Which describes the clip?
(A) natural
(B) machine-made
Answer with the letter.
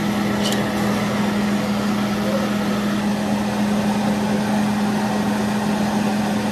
A